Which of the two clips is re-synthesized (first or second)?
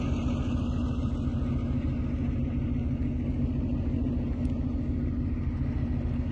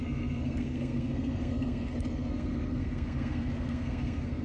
second